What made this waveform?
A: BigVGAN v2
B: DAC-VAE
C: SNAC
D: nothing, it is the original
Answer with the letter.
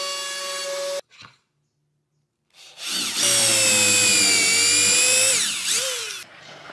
D